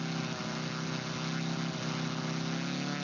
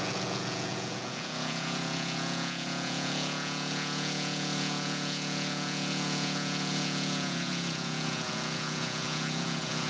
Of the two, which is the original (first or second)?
first